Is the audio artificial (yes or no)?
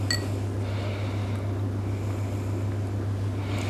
no